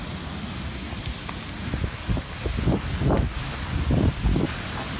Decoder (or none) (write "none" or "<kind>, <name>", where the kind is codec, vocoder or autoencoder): none